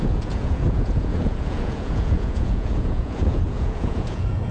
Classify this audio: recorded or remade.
remade